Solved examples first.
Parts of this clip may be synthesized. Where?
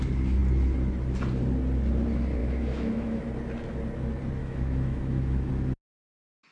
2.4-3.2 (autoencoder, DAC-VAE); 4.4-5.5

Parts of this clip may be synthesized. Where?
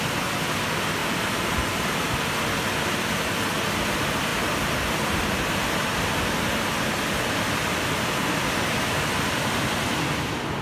none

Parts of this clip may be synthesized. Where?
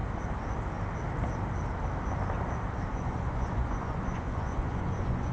2.9-5.3 (vocoder, Vocos)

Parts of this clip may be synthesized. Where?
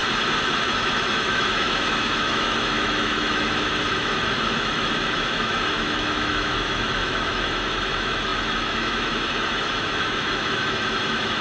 0.6-11.4 (autoencoder, DAC-VAE)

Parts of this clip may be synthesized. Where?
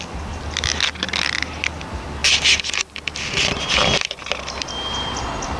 none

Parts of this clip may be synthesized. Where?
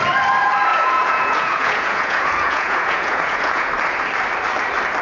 0.7-3.7 (vocoder, Vocos)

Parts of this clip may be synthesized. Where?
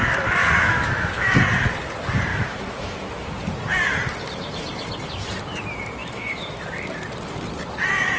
0.4-1.3 (autoencoder, DAC-VAE); 2.3-3.3; 6.0-6.6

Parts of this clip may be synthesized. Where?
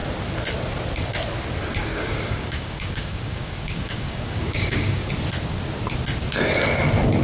1.9-5.1 (codec, DAC)